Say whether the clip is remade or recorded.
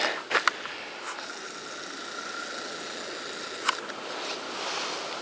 recorded